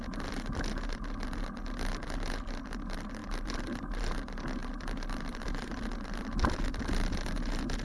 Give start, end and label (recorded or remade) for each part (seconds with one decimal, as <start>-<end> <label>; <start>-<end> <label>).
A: 0.0-3.2 recorded; 3.2-4.0 remade; 4.0-4.6 recorded; 4.6-7.1 remade; 7.1-7.8 recorded

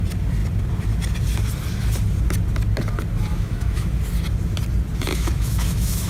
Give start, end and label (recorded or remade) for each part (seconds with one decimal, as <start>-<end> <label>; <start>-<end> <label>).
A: 0.0-3.3 recorded; 3.3-4.0 remade; 4.0-5.1 recorded; 5.1-6.1 remade

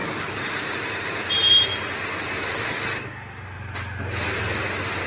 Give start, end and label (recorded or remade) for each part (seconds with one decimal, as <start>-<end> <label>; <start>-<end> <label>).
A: 0.0-1.7 remade; 1.7-5.1 recorded